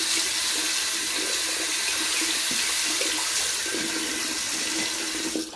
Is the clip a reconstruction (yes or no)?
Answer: no